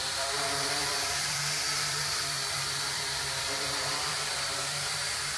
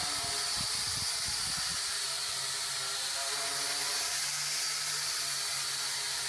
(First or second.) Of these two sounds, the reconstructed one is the first